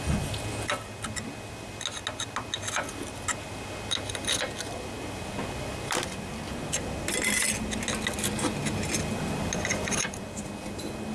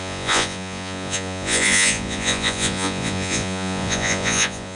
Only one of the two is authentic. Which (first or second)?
first